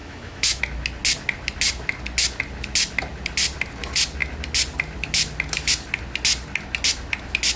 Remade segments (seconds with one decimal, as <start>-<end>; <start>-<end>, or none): 0.0-0.6